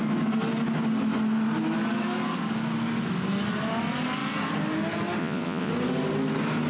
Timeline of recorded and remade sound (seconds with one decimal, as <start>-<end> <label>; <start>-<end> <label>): 0.0-5.2 recorded; 5.2-5.7 remade; 5.7-6.7 recorded